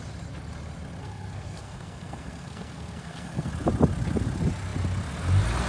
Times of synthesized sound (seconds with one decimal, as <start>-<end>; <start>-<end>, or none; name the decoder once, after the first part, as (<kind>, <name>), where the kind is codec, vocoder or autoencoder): 1.0-3.5 (codec, SNAC)